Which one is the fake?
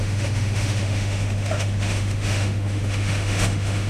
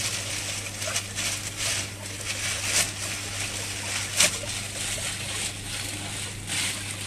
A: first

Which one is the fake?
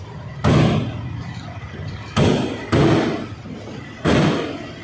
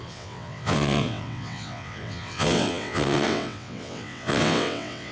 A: second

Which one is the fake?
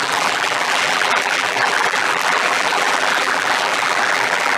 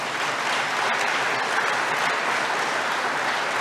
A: first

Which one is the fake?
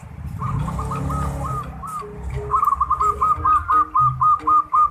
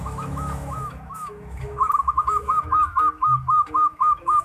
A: second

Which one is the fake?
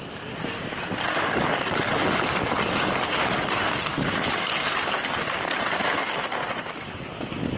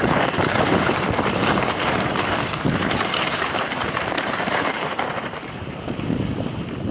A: second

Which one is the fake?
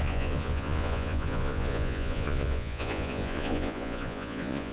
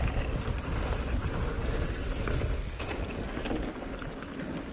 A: first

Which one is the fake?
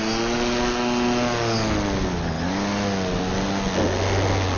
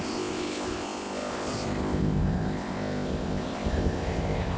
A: second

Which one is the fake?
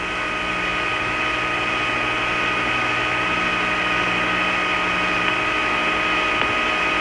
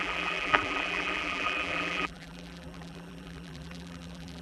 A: second